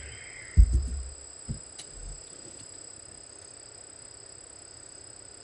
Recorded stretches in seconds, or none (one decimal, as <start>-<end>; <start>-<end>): 0.0-5.4